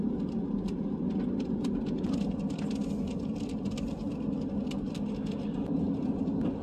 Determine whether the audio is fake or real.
real